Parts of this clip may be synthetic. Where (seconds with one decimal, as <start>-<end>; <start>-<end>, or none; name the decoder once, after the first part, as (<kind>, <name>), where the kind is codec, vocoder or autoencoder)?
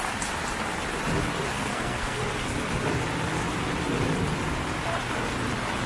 1.5-2.2 (codec, SNAC)